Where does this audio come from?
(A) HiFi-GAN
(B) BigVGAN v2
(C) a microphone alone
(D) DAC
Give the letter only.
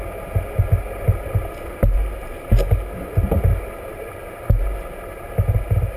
C